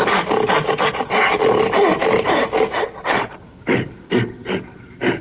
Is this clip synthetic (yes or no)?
no